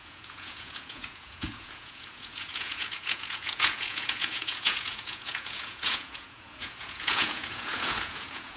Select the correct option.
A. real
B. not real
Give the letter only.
B